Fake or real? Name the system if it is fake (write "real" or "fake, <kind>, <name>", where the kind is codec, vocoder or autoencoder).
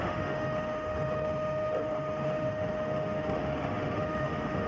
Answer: fake, autoencoder, DAC-VAE